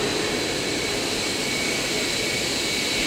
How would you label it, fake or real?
fake